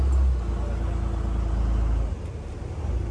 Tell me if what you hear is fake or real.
real